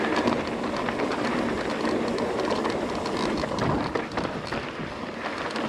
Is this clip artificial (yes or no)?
no